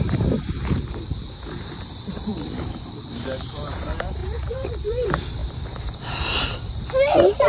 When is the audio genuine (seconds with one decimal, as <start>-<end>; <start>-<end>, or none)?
2.3-2.9